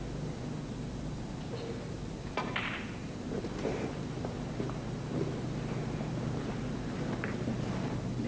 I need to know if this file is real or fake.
real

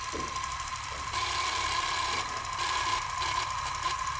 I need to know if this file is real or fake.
real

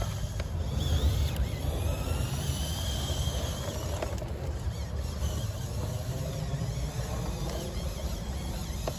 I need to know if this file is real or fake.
real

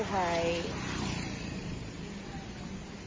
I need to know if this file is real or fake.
real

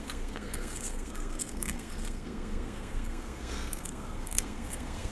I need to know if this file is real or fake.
fake